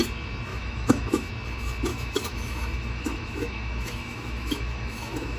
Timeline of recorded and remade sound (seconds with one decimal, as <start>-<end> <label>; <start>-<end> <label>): 0.0-0.5 recorded; 0.5-1.3 remade; 1.3-1.9 recorded; 1.9-5.4 remade